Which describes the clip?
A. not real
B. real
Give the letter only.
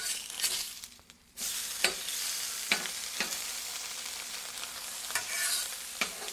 A